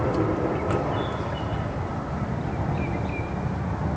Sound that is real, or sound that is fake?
real